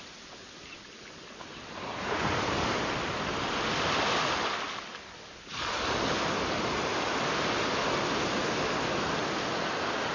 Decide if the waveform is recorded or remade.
recorded